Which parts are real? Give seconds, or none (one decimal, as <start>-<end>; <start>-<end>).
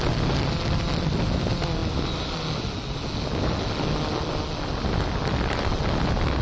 0.0-6.4